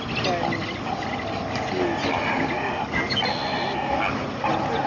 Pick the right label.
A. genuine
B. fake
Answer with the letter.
A